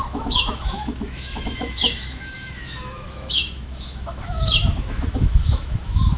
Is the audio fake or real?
fake